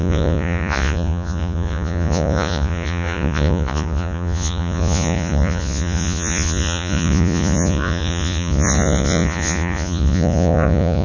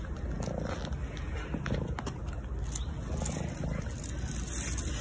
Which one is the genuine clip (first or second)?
second